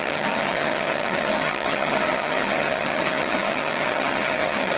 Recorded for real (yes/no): no